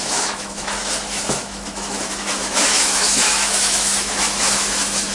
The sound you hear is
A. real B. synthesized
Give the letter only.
B